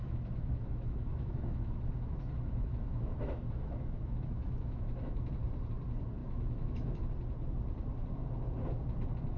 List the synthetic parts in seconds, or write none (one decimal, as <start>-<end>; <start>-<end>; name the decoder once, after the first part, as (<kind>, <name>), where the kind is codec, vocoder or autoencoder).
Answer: 0.0-5.3 (autoencoder, DAC-VAE); 6.2-7.0